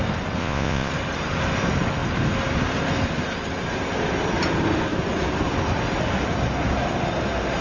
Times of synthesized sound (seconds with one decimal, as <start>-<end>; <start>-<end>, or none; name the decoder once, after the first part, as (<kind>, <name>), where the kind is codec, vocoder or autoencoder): 0.4-0.9 (vocoder, Vocos)